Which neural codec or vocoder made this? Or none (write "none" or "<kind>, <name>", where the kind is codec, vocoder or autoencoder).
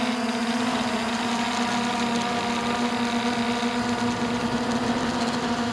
none